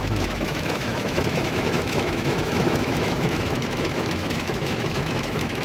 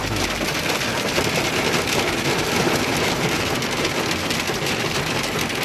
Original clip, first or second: second